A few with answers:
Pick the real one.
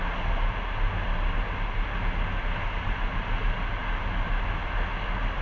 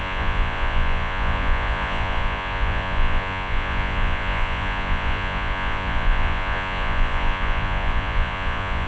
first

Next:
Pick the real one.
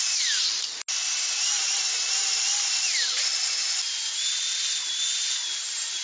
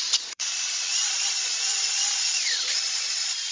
first